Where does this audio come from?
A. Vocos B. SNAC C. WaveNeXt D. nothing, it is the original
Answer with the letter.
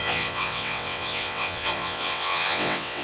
C